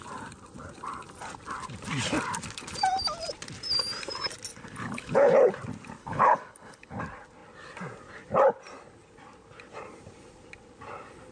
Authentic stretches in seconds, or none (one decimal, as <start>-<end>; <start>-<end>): 0.0-4.5; 5.3-6.0; 7.0-11.3